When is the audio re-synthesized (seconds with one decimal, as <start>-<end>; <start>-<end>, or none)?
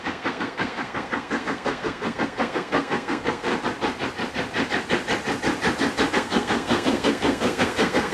0.0-3.5; 6.1-8.1